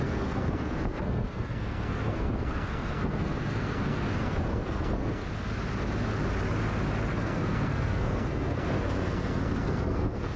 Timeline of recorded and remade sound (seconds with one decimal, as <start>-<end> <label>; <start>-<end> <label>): 0.0-5.2 remade; 5.2-7.1 recorded; 7.1-10.4 remade